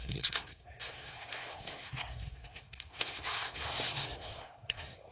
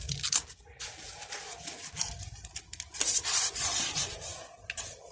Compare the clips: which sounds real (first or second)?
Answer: second